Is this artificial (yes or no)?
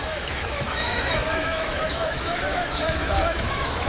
yes